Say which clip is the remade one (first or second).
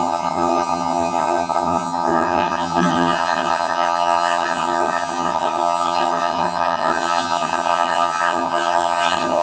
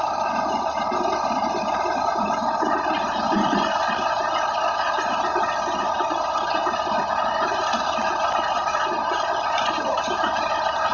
first